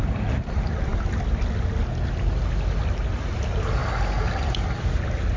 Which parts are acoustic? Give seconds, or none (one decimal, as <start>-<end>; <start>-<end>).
0.0-5.4